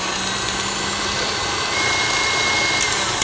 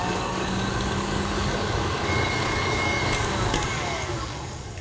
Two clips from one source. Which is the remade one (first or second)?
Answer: second